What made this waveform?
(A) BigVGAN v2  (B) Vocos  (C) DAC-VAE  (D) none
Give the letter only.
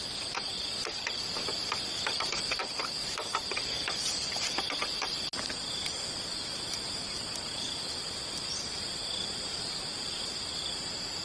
A